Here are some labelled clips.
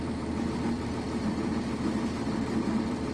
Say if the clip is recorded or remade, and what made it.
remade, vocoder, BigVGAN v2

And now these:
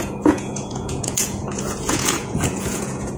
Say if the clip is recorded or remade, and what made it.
remade, vocoder, Vocos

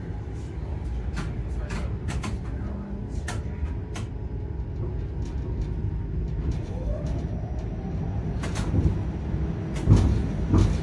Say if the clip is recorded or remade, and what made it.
recorded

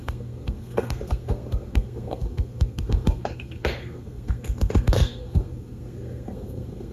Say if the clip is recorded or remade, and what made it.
remade, codec, SNAC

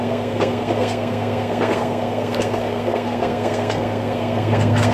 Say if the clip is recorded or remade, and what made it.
remade, codec, SNAC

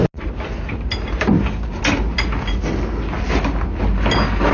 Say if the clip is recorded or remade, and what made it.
recorded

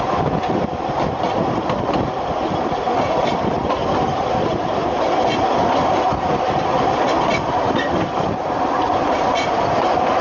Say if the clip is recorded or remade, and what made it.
recorded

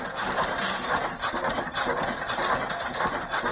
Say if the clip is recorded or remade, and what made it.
recorded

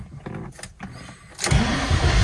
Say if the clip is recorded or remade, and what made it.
recorded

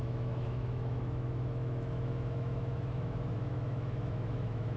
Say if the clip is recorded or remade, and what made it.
remade, autoencoder, DAC-VAE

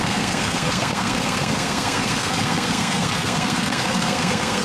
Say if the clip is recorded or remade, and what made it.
remade, codec, SNAC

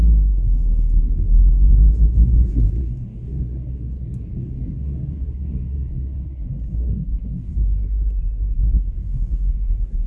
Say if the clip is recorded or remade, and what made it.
remade, codec, SNAC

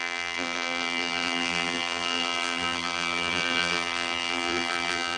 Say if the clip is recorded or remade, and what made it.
remade, vocoder, BigVGAN v2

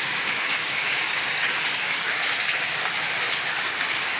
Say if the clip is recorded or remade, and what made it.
remade, codec, DAC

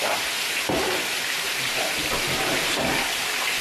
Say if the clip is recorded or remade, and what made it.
recorded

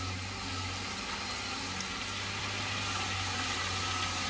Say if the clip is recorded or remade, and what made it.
recorded